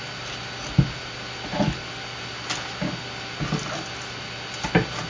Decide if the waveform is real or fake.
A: real